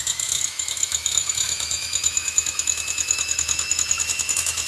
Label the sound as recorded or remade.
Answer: remade